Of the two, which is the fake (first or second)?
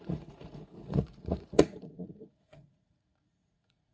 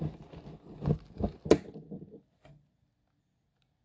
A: first